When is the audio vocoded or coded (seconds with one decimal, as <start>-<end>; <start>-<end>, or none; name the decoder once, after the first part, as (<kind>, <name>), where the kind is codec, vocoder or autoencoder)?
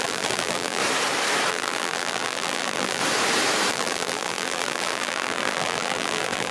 0.0-0.8 (vocoder, BigVGAN v2); 1.5-3.0; 3.7-6.5